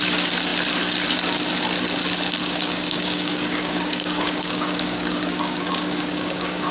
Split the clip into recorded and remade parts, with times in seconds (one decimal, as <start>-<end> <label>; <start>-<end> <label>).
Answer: 0.0-2.4 recorded; 2.4-6.7 remade